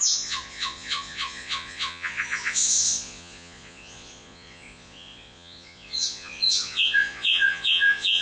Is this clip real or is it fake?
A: fake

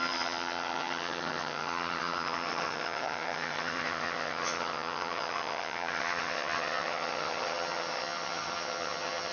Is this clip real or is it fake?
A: fake